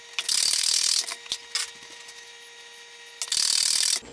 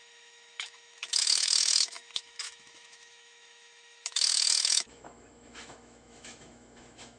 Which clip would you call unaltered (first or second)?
first